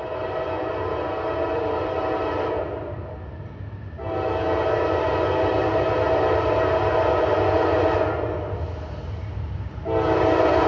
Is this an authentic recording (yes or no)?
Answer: yes